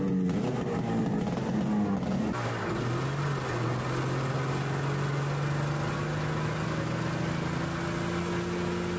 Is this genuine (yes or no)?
yes